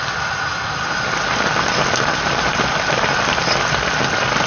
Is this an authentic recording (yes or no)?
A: yes